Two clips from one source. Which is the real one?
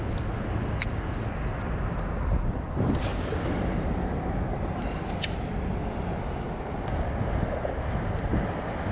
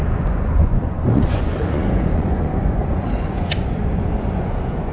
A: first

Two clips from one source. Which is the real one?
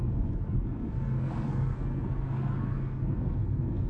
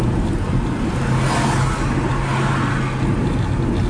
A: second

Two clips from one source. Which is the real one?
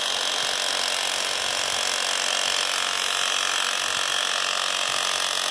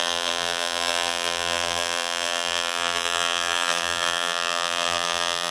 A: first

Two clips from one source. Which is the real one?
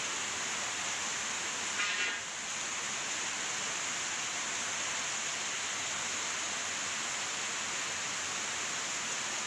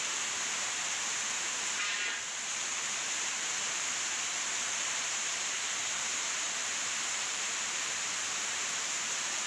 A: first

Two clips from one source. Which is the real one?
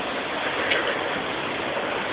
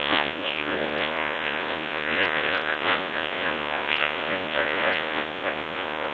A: first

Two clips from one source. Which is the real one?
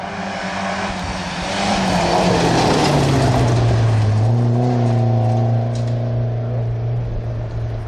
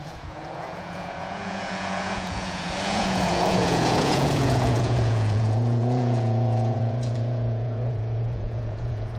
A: first